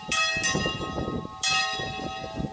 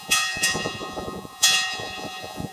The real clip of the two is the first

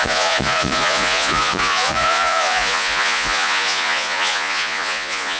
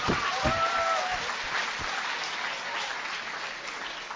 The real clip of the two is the second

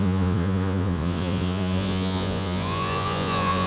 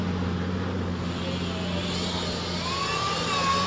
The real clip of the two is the second